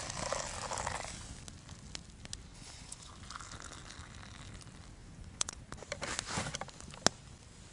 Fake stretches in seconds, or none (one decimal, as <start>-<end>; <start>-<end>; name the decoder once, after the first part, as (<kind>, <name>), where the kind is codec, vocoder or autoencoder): 2.5-3.1 (vocoder, Vocos); 5.0-5.6